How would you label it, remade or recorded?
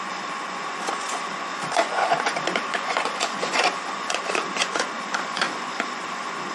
remade